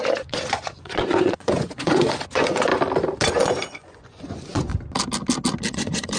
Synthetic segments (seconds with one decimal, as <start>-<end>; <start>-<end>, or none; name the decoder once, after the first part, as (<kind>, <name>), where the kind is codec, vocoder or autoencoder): 0.0-2.7 (vocoder, Vocos); 3.3-4.7; 5.7-6.2